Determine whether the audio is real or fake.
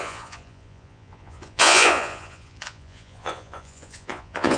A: fake